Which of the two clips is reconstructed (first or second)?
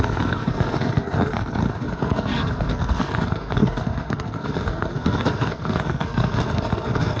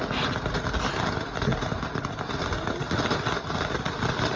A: first